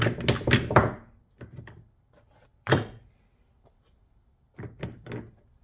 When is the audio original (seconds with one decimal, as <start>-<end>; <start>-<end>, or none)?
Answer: 0.0-2.5; 3.2-5.6